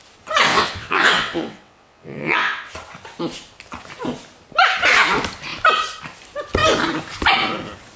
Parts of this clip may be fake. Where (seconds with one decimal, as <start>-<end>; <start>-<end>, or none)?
0.5-2.7